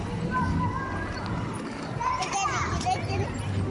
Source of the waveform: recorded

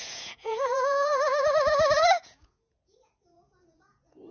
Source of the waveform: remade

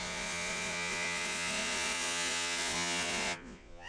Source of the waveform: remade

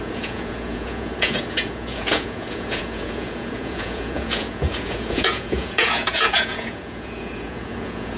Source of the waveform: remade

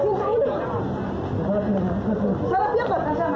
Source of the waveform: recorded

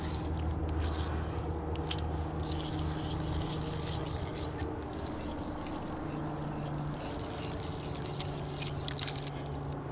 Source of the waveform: recorded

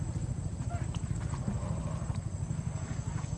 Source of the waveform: recorded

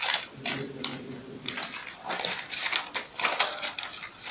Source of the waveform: recorded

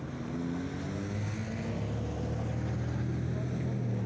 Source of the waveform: recorded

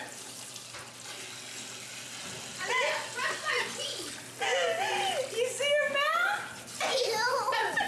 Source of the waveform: recorded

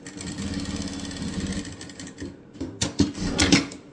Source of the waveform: recorded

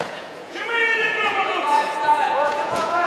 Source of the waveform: remade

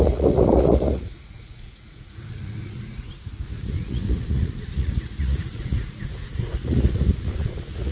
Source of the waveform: remade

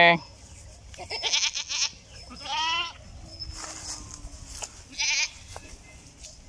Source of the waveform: recorded